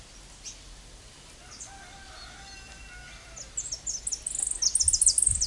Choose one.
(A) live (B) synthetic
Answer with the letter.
A